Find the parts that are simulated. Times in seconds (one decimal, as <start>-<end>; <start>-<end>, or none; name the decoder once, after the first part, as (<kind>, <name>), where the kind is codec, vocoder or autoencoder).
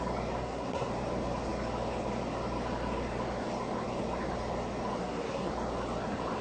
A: 0.4-0.9 (codec, SNAC); 5.0-5.5